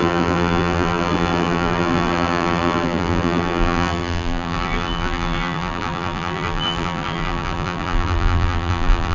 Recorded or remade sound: remade